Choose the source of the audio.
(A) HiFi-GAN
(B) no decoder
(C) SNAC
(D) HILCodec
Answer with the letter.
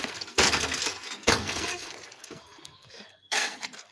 C